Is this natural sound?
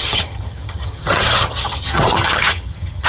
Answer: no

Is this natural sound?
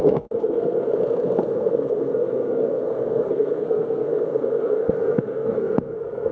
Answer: no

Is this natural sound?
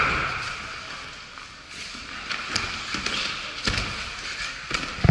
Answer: yes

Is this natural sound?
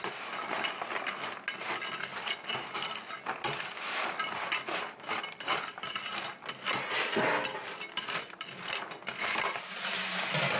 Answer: yes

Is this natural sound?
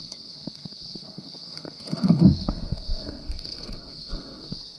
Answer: no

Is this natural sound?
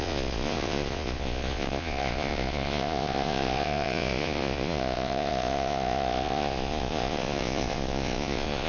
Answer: no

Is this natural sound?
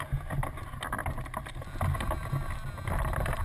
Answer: yes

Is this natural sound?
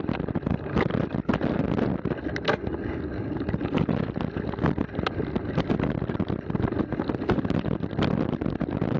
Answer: yes